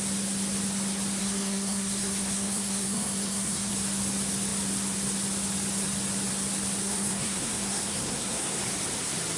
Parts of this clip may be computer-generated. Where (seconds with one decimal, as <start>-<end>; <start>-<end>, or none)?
1.2-3.7; 6.8-8.6